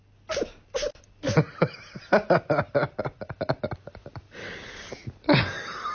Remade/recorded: recorded